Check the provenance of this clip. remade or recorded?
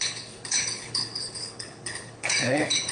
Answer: remade